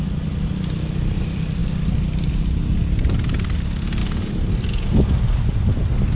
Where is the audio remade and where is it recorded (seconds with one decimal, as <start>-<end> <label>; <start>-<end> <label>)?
0.0-6.2 recorded